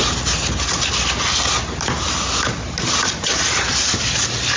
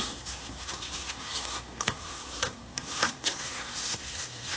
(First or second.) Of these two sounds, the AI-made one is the second